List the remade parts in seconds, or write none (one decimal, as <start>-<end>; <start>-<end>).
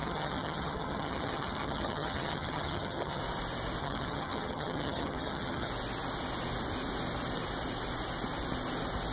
0.0-3.2; 3.8-5.7